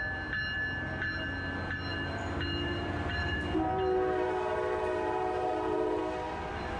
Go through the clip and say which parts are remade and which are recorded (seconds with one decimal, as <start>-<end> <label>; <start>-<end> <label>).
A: 0.0-1.9 recorded; 1.9-6.0 remade; 6.0-6.8 recorded